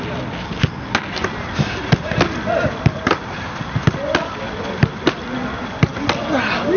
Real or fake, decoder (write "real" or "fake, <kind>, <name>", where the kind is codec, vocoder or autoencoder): real